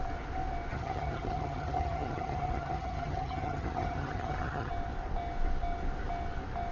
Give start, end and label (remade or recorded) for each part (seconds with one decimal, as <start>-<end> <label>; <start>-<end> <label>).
0.0-0.7 recorded; 0.7-4.7 remade; 4.7-6.7 recorded